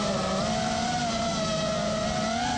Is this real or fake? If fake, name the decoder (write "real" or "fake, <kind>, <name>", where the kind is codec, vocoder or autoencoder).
real